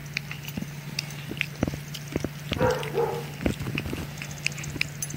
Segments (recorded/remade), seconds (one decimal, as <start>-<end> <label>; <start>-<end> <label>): 0.0-5.2 recorded